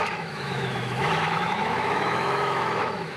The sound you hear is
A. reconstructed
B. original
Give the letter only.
A